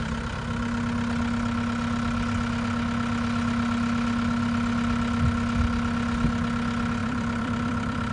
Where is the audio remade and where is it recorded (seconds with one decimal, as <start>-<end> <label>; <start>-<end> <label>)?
0.0-7.0 recorded; 7.0-8.1 remade